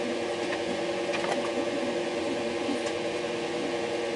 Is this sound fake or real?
fake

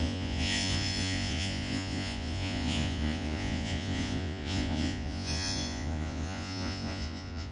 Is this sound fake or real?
fake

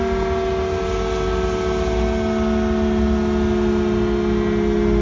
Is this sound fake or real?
real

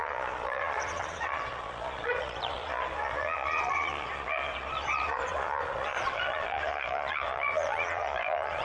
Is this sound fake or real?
fake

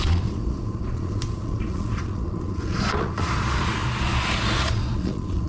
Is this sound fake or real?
fake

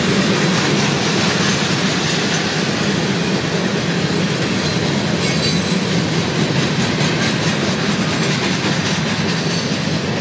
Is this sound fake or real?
real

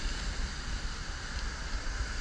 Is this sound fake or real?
real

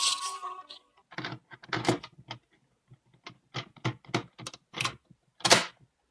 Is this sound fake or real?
real